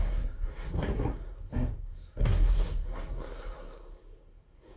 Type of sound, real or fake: fake